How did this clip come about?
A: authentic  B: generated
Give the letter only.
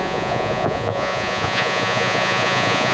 B